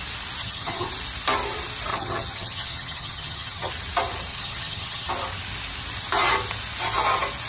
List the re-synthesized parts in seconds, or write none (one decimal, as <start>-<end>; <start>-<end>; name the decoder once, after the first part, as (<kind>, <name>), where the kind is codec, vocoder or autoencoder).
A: 0.4-0.9 (vocoder, HiFi-GAN); 1.9-3.7; 4.3-5.1